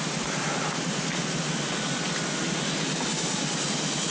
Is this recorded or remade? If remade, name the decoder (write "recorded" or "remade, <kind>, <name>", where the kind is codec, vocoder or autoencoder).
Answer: recorded